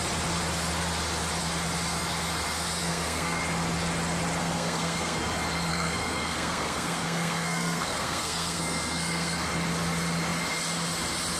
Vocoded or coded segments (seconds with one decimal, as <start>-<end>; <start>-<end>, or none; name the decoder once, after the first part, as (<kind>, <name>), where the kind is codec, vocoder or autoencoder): 2.8-3.4 (codec, SNAC); 4.4-5.2; 5.7-9.4